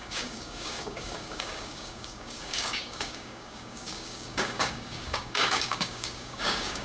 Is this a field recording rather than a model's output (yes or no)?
no